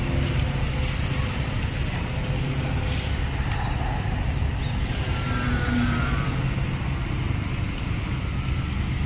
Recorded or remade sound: recorded